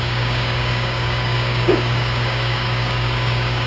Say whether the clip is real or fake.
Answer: fake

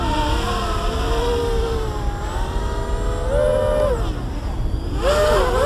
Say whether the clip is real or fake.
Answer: real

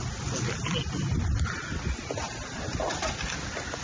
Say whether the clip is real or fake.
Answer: real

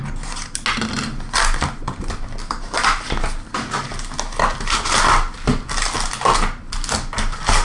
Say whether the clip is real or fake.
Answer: real